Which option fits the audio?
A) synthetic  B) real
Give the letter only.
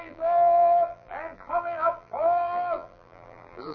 A